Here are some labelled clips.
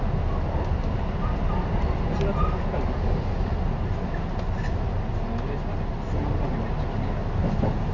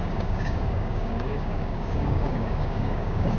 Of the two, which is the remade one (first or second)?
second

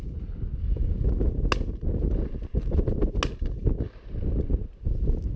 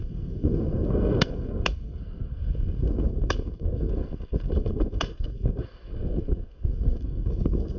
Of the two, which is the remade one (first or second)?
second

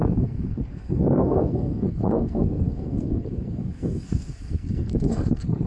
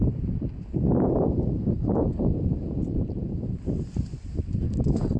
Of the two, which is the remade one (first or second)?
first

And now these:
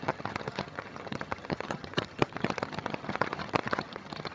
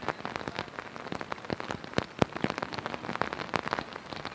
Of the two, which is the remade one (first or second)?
first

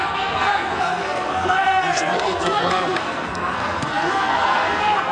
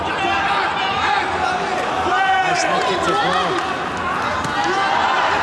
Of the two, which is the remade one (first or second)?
first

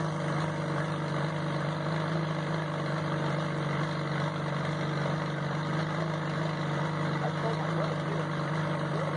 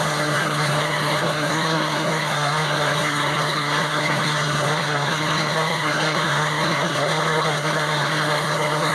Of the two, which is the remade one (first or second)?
second